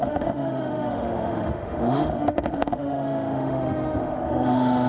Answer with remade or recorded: remade